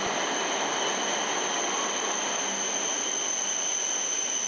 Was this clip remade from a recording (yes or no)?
no